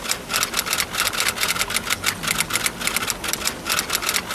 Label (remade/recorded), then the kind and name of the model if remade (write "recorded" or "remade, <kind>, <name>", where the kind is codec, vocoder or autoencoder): recorded